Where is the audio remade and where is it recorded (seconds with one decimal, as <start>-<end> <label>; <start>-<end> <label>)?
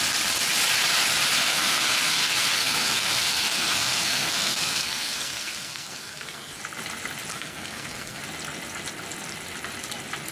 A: 0.0-1.5 recorded; 1.5-6.6 remade; 6.6-7.3 recorded; 7.3-8.2 remade; 8.2-10.3 recorded